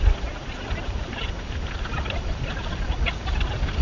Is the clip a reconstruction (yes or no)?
no